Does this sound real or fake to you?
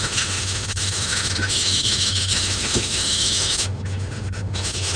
fake